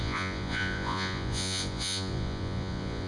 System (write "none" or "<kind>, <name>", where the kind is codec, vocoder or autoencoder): vocoder, Vocos